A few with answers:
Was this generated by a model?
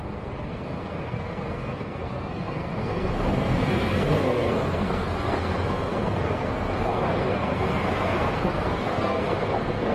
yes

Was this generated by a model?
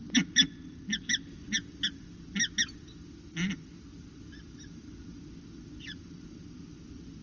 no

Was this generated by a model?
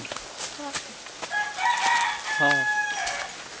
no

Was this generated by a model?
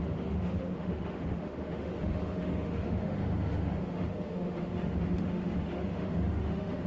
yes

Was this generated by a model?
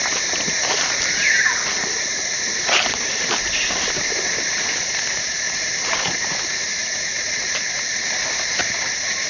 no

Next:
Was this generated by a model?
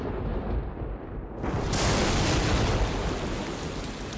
no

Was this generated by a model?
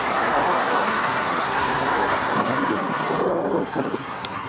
yes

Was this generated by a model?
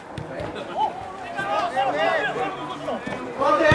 no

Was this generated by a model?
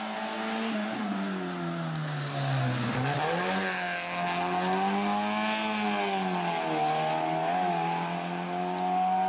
no